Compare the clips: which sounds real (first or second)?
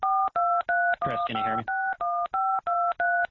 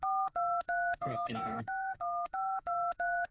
first